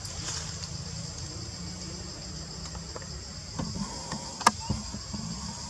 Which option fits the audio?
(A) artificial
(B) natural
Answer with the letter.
B